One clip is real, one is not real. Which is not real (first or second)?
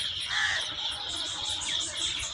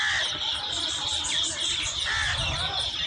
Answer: first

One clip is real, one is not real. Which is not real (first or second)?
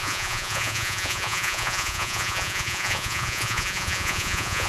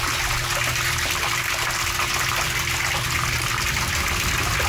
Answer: first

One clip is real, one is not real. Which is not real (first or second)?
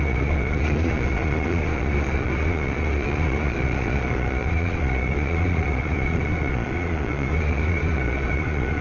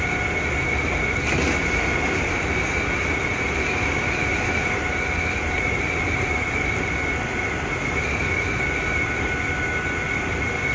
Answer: first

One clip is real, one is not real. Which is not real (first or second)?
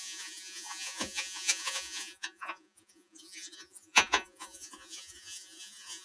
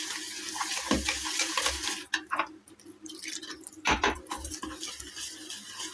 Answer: first